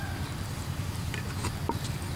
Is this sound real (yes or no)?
yes